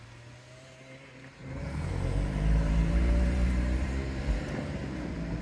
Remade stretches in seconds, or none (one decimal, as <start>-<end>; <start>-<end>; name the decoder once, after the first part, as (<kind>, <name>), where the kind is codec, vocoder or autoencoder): 1.4-4.2 (vocoder, BigVGAN v2)